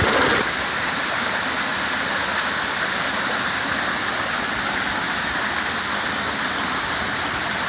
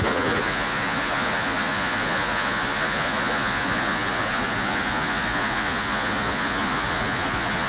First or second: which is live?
first